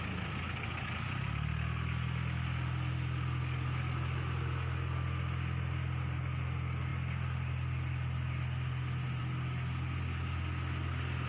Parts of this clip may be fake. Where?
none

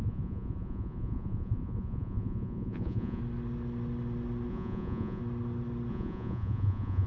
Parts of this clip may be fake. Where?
0.0-3.2 (vocoder, Vocos); 4.5-5.2; 5.9-7.1